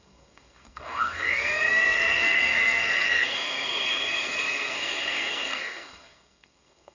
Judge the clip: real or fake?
fake